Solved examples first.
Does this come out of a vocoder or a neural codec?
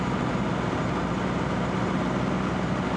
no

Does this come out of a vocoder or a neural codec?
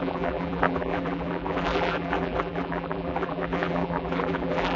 yes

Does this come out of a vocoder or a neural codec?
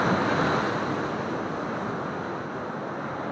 no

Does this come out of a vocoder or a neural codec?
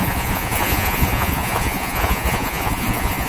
yes